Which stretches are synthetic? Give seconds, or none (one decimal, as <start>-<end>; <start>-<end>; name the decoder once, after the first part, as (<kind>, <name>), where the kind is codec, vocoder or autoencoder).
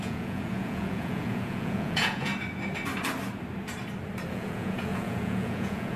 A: 0.0-2.3 (vocoder, Vocos); 4.3-6.0